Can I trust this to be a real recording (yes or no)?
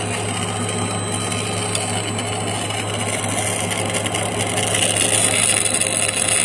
yes